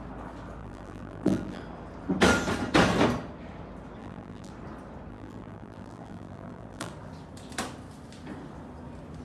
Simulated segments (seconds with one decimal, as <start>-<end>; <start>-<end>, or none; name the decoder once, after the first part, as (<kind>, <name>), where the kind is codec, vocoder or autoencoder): 0.6-1.6 (vocoder, BigVGAN v2); 4.0-4.5; 5.1-6.9